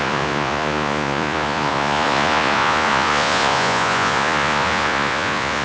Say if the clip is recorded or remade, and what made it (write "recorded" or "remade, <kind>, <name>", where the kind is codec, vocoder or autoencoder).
remade, vocoder, Vocos